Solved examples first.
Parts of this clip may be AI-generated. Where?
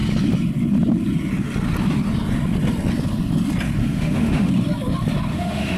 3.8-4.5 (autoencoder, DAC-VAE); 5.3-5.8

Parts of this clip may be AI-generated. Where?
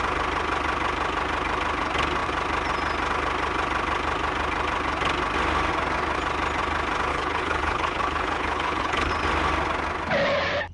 7.1-9.1 (codec, HILCodec)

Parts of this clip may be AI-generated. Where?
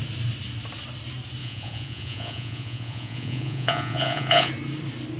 1.4-4.5 (vocoder, Vocos)